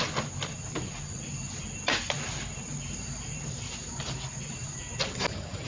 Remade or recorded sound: recorded